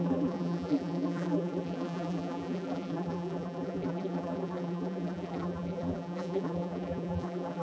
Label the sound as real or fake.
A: fake